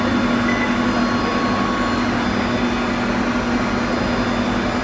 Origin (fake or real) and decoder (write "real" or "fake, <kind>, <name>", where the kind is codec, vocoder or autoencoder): real